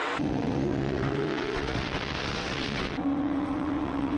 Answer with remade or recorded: remade